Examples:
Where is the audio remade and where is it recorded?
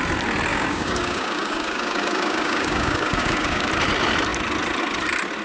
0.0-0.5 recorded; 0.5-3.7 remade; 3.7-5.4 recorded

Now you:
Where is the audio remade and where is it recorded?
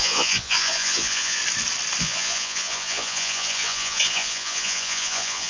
0.0-1.4 remade; 1.4-2.0 recorded; 2.0-5.5 remade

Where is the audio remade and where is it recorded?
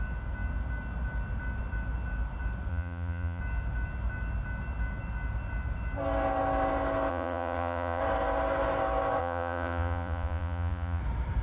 0.0-2.7 recorded; 2.7-3.4 remade; 3.4-7.1 recorded; 7.1-8.0 remade; 8.0-9.2 recorded; 9.2-11.0 remade; 11.0-11.4 recorded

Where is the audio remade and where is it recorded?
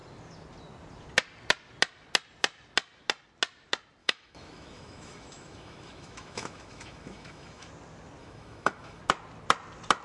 0.0-4.0 recorded; 4.0-7.7 remade; 7.7-8.2 recorded; 8.2-9.0 remade; 9.0-10.0 recorded